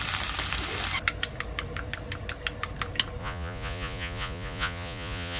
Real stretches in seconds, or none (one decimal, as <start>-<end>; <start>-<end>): 0.0-3.2